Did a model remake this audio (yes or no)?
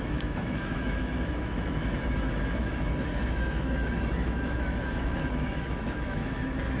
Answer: yes